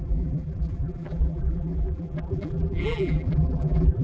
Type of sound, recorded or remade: remade